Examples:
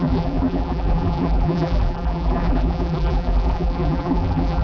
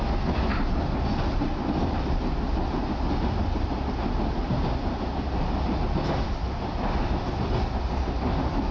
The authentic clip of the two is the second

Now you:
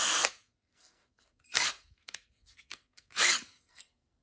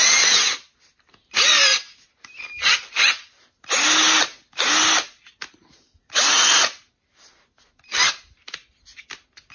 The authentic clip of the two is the second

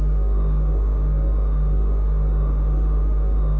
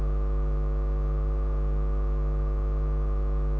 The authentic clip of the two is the second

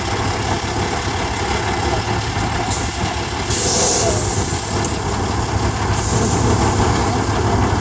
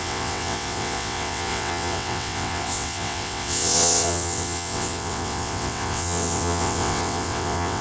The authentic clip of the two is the first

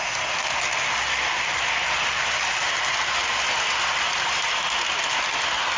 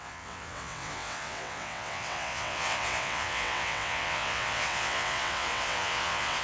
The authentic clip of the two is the first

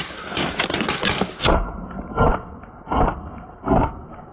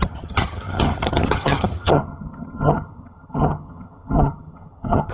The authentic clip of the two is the first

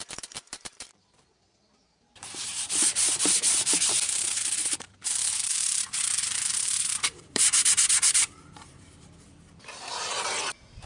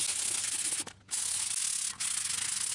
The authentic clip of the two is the second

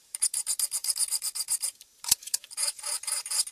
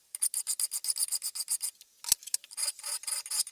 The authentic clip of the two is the second